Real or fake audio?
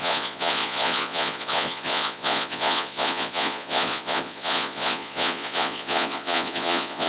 fake